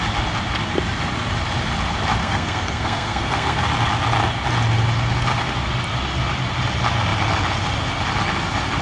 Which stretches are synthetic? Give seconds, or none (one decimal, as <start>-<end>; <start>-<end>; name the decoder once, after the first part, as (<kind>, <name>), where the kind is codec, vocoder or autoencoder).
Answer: 2.2-3.6 (codec, SNAC)